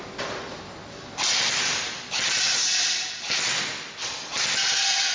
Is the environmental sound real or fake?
real